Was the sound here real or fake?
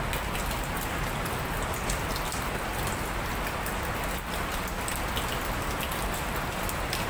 real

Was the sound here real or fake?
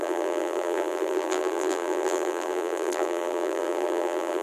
fake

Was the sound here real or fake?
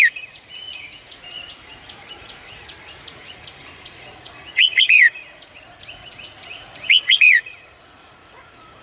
fake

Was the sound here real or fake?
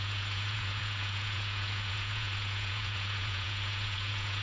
fake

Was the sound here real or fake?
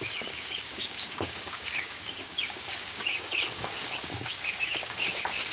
fake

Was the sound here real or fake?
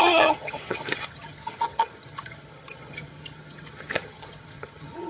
fake